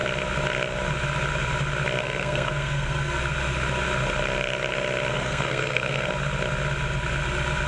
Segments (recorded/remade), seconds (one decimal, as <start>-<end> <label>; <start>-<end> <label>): 0.0-2.0 recorded; 2.0-3.2 remade; 3.2-5.1 recorded; 5.1-6.1 remade; 6.1-7.7 recorded